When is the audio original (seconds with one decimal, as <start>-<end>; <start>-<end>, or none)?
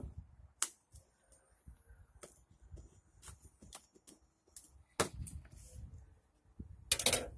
0.0-7.4